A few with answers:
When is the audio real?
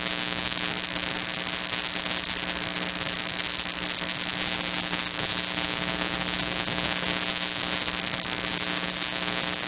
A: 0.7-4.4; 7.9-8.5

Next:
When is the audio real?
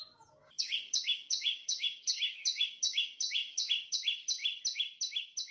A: 0.0-0.4; 3.7-5.5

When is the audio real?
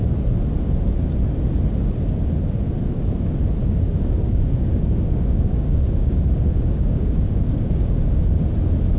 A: 0.0-3.6; 8.4-9.0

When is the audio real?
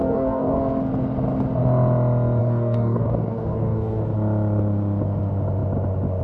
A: 0.6-2.4; 4.0-6.2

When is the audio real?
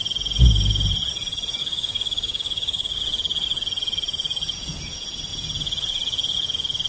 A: 0.0-1.6; 3.0-6.9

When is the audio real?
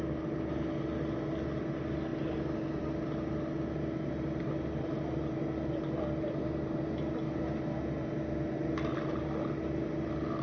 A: 0.0-10.4